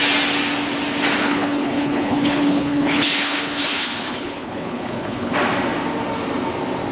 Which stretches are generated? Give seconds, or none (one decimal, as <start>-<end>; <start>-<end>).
1.2-5.3